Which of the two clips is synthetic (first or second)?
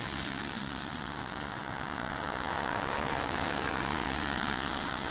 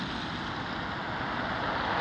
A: first